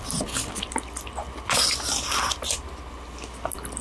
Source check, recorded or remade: recorded